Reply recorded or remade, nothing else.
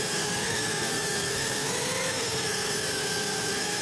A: remade